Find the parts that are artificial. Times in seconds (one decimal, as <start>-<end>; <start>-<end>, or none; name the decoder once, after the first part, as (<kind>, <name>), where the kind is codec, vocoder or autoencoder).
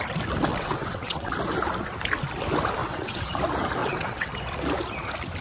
0.5-1.3 (vocoder, WaveNeXt); 2.8-3.3; 3.8-4.3